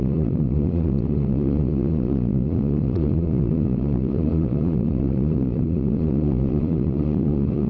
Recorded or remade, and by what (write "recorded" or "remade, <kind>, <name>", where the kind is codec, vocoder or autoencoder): remade, vocoder, Vocos